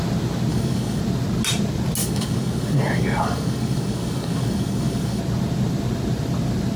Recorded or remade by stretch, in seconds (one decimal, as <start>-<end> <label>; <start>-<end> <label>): 0.0-0.5 recorded; 0.5-1.0 remade; 1.0-2.0 recorded; 2.0-5.2 remade; 5.2-6.8 recorded